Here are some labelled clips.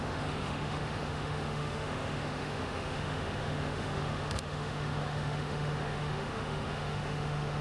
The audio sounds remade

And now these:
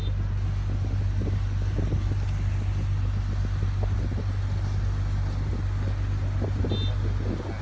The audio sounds recorded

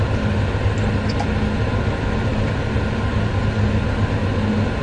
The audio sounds recorded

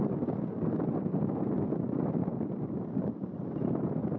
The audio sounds recorded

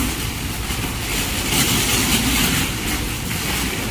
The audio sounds recorded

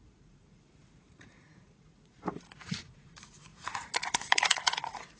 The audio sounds remade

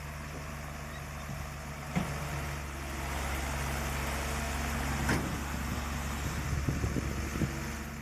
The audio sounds recorded